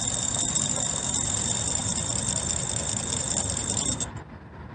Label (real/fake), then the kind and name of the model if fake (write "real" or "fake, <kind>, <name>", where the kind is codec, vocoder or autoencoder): real